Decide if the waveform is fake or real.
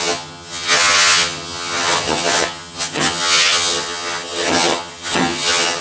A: fake